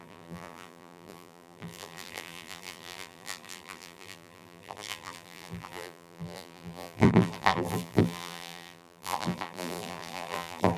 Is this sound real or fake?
fake